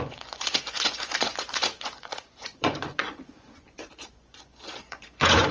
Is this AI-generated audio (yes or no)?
yes